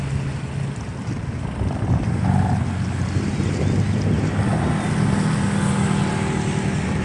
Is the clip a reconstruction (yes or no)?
no